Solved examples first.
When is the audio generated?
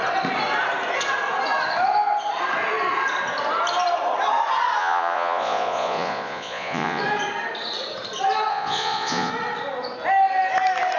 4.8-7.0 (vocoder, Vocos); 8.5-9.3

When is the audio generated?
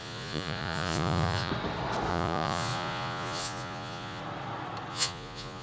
0.0-1.5 (vocoder, Vocos); 2.1-4.2; 4.9-5.6